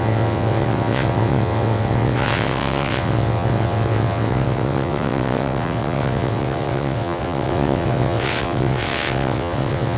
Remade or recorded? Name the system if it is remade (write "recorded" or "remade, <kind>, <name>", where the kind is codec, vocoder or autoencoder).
remade, vocoder, WaveNeXt